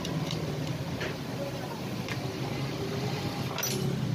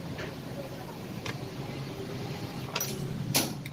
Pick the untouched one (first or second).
first